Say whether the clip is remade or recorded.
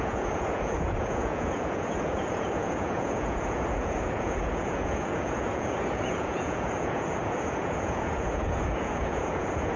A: remade